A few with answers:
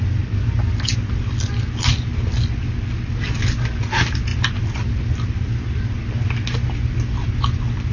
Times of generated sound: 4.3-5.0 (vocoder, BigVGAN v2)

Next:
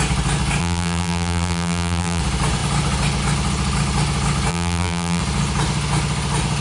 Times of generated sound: 0.6-2.2 (vocoder, BigVGAN v2); 4.5-5.2

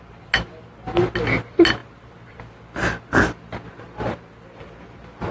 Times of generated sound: 1.8-5.3 (vocoder, BigVGAN v2)

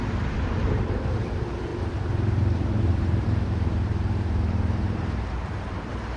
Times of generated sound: 0.0-6.2 (vocoder, BigVGAN v2)

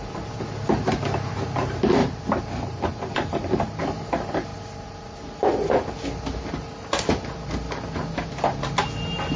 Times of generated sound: 2.0-3.8 (vocoder, BigVGAN v2)